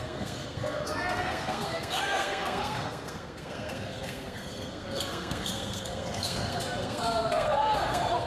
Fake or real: fake